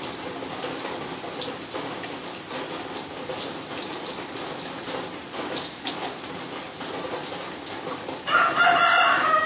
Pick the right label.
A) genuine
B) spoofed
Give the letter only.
A